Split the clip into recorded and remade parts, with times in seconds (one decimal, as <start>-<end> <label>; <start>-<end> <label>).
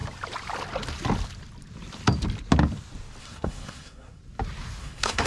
0.0-3.2 recorded; 3.2-4.2 remade; 4.2-4.8 recorded; 4.8-5.3 remade